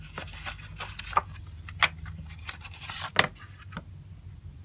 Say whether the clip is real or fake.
real